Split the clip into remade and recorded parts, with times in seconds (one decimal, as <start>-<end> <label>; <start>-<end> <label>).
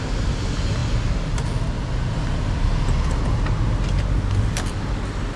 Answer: 0.0-5.4 recorded